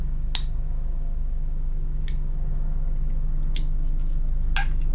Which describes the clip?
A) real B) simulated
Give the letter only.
A